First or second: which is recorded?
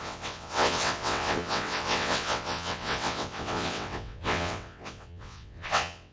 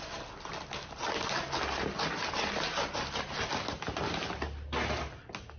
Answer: second